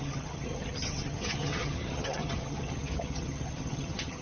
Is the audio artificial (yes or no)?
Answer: yes